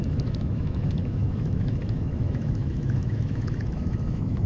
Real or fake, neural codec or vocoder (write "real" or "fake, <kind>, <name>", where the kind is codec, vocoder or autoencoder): fake, autoencoder, DAC-VAE